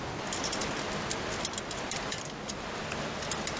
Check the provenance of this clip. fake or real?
real